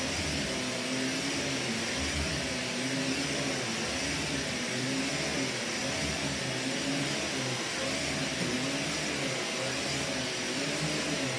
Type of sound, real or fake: real